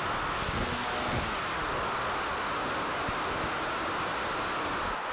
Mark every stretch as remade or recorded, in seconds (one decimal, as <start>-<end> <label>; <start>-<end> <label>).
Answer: 0.0-5.1 recorded